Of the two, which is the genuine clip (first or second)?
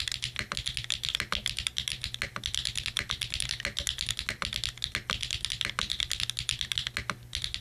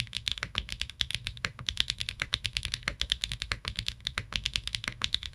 first